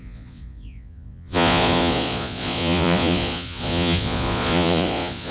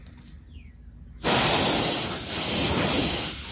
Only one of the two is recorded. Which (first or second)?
second